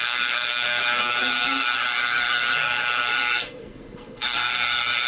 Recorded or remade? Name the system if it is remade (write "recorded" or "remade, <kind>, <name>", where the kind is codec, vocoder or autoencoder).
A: remade, codec, SNAC